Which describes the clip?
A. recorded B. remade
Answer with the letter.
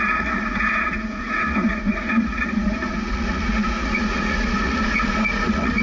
B